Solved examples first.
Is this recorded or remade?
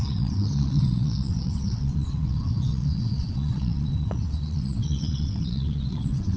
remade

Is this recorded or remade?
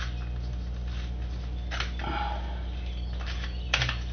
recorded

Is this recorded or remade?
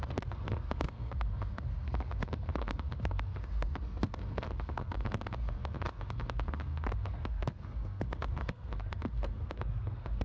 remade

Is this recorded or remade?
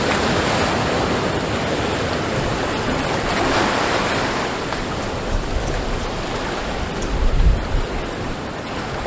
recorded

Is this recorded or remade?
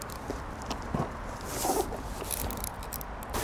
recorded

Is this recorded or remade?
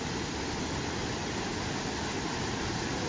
recorded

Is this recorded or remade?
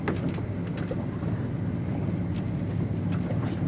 recorded